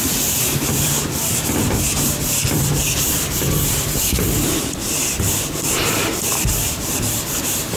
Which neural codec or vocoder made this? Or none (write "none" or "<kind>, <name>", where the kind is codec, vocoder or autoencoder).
vocoder, BigVGAN v2